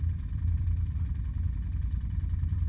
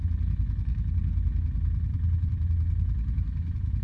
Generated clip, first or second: first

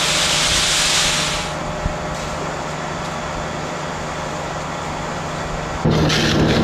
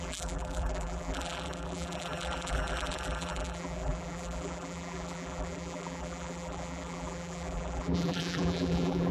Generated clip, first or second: second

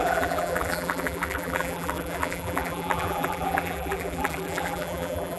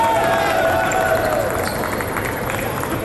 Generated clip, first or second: first